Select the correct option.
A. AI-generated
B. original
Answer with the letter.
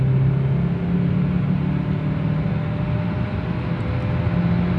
B